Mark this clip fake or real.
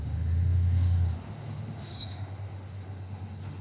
fake